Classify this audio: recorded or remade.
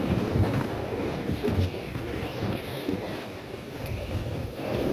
remade